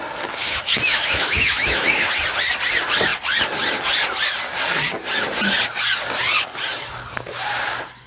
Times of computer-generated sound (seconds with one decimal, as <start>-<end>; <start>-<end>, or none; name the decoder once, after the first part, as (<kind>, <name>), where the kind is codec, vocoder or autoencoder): 0.4-2.1 (autoencoder, DAC-VAE)